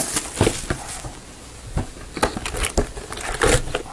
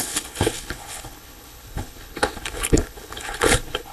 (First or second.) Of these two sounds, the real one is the first